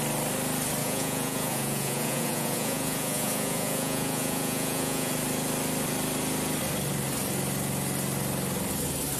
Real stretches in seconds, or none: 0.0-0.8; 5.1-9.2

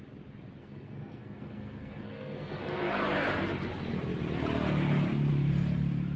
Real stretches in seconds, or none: 0.0-0.6; 2.9-6.2